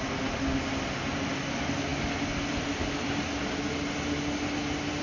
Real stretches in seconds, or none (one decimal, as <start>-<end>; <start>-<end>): 0.0-5.0